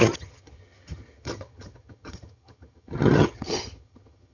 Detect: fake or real fake